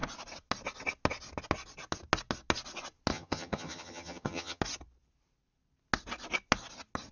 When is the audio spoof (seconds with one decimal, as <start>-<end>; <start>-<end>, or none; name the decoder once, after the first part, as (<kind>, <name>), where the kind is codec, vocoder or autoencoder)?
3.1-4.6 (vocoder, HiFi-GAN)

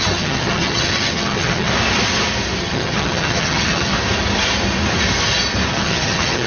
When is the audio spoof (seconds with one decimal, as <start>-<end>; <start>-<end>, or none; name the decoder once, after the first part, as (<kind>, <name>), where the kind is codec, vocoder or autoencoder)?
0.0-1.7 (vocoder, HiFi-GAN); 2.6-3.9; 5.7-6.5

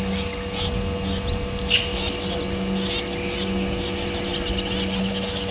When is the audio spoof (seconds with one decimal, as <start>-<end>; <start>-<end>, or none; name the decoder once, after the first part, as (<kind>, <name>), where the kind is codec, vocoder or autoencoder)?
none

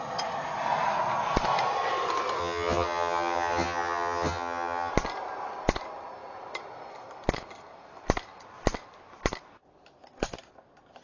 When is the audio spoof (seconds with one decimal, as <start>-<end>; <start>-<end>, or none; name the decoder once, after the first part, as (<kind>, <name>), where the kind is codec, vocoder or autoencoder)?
2.4-4.9 (vocoder, HiFi-GAN)

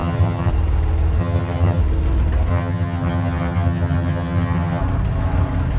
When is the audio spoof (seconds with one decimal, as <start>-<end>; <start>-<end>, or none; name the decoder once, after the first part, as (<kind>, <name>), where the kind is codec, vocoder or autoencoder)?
0.0-0.5 (vocoder, HiFi-GAN); 1.2-1.8; 2.5-4.8

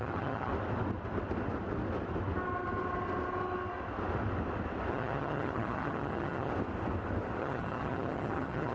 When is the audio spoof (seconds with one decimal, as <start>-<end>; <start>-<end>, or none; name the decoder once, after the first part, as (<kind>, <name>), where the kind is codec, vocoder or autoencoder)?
0.0-0.5 (vocoder, HiFi-GAN); 4.9-6.5; 7.4-8.7